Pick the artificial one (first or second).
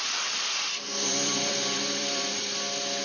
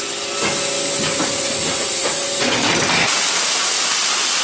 first